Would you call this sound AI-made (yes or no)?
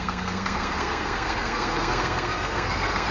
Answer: yes